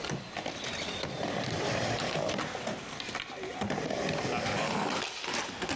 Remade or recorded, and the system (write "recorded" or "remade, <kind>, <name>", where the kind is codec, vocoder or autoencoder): recorded